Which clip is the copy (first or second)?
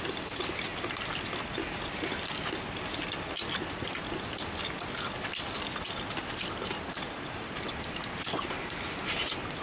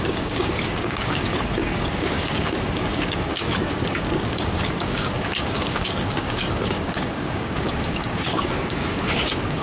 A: second